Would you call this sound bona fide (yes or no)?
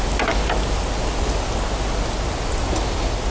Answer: yes